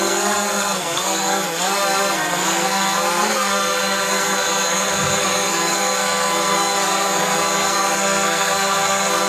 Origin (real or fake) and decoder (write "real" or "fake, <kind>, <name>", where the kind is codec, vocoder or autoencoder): fake, codec, SNAC